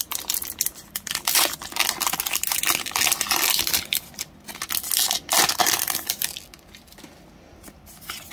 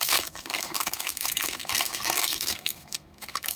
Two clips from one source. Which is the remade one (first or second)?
second